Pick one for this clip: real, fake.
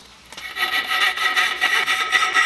real